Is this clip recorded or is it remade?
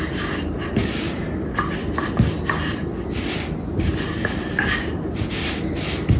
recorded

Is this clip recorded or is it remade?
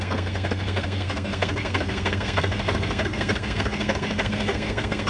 remade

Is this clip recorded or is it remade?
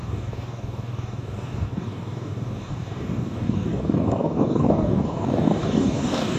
remade